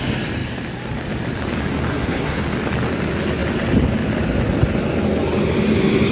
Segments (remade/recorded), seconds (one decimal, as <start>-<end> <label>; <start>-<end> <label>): 0.0-1.9 recorded; 1.9-2.4 remade; 2.4-6.1 recorded